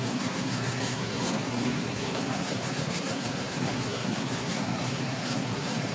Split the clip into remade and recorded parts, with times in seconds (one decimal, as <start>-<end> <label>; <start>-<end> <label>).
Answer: 0.0-5.9 remade